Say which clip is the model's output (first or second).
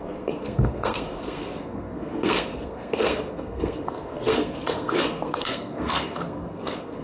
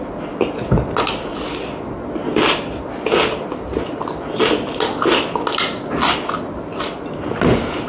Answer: first